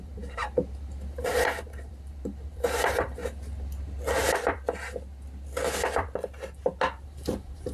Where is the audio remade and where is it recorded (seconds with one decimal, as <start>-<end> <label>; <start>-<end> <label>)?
0.0-3.2 remade; 3.2-7.0 recorded; 7.0-7.7 remade